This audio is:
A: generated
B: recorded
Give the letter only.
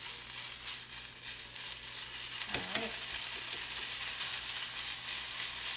B